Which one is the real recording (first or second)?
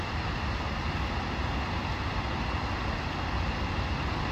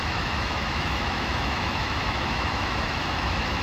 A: first